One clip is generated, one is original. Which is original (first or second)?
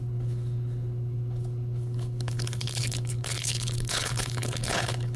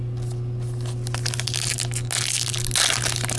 second